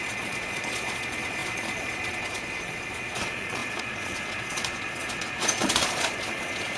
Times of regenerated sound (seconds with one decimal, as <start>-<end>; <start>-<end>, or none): 0.0-6.8